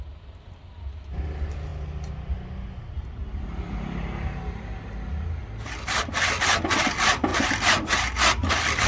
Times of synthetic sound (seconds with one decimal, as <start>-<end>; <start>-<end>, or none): none